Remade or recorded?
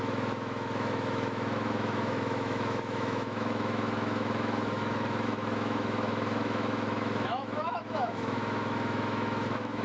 remade